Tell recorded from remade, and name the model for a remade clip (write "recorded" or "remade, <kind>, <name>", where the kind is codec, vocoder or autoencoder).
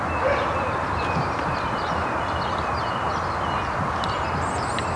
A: recorded